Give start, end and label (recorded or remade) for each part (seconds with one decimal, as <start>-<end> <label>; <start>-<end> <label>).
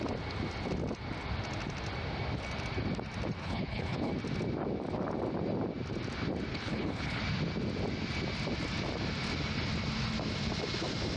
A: 0.0-3.4 recorded; 3.4-4.1 remade; 4.1-6.5 recorded; 6.5-7.2 remade; 7.2-11.2 recorded